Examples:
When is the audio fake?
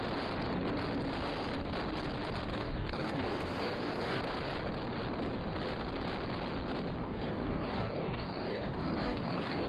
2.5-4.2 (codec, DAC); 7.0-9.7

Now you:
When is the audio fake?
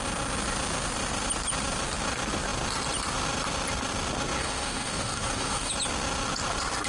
4.4-5.7 (codec, DAC)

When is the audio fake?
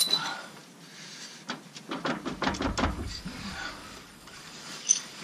0.0-0.6 (codec, DAC); 2.9-5.2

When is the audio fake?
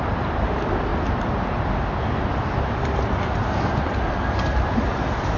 none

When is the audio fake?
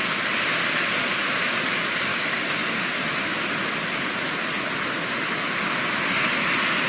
2.1-3.0 (codec, DAC)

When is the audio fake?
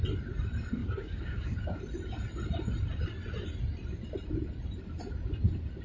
0.8-1.8 (codec, DAC)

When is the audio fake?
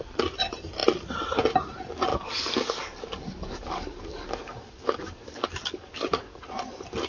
2.1-6.4 (codec, DAC)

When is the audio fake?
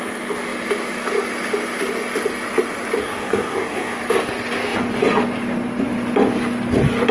3.0-4.0 (codec, DAC)